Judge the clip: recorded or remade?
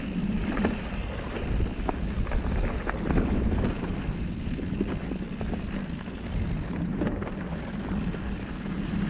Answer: recorded